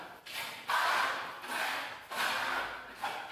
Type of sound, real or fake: real